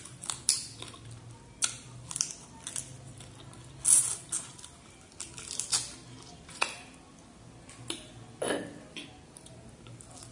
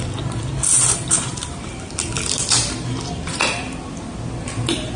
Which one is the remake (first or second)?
second